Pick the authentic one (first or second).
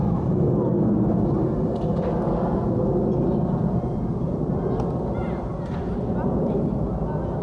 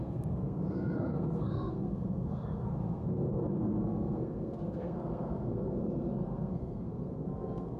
first